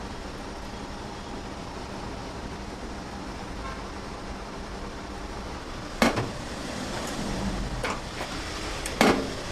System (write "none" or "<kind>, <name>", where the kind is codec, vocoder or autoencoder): vocoder, BigVGAN v2